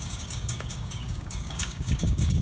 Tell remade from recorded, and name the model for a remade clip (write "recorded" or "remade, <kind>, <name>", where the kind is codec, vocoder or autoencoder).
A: remade, codec, DAC